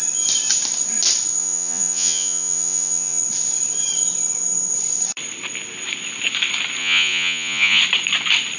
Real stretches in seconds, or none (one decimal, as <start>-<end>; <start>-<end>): 0.0-1.4; 3.2-6.8; 7.8-8.6